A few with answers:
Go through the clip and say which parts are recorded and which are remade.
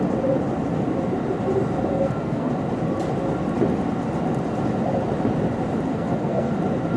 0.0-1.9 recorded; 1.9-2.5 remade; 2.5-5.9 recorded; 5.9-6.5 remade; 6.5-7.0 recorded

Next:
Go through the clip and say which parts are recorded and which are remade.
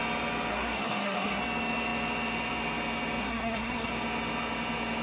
0.0-0.5 recorded; 0.5-1.4 remade; 1.4-3.2 recorded; 3.2-3.9 remade; 3.9-5.0 recorded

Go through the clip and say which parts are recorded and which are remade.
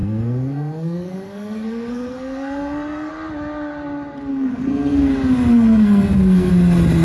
0.0-3.1 remade; 3.1-4.3 recorded; 4.3-5.1 remade; 5.1-5.5 recorded; 5.5-6.5 remade; 6.5-7.0 recorded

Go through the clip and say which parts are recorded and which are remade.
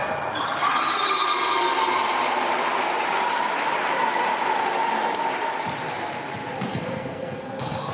0.0-6.7 recorded; 6.7-7.9 remade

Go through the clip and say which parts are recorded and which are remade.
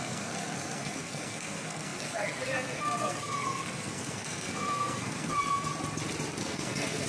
0.0-5.7 remade; 5.7-6.4 recorded; 6.4-7.1 remade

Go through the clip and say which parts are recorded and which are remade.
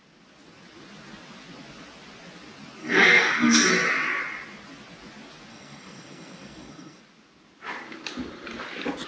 0.0-2.8 recorded; 2.8-3.7 remade; 3.7-5.5 recorded; 5.5-7.0 remade; 7.0-9.1 recorded